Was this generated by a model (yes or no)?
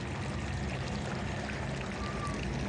no